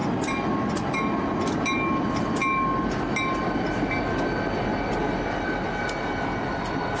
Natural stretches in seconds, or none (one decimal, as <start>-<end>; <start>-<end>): 0.0-7.0